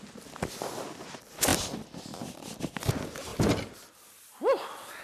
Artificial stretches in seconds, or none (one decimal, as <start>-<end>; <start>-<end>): none

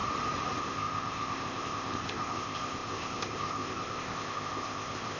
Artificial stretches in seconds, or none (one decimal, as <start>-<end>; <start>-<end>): 0.6-5.2

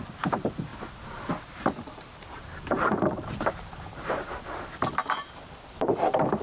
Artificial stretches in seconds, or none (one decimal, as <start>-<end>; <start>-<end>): 0.0-6.4

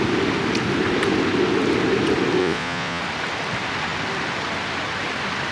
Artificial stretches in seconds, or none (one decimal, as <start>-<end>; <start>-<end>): 2.4-3.0

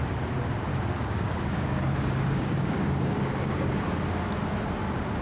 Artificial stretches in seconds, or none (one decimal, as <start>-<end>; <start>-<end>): 0.7-3.7

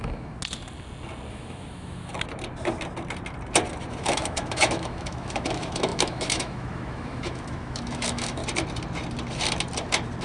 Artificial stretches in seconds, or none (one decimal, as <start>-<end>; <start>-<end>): 0.0-0.4; 1.3-2.1; 4.0-8.4

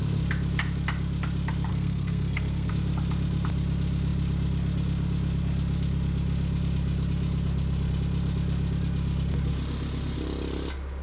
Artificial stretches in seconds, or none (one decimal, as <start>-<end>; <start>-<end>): 1.7-2.7

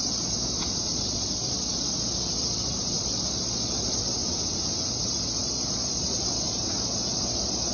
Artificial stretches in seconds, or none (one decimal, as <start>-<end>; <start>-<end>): 0.0-4.2; 4.9-7.7